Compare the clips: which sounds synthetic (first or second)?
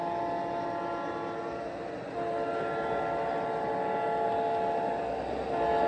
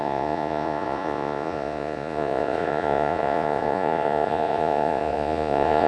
second